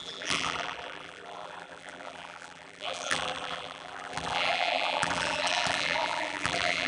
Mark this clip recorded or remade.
remade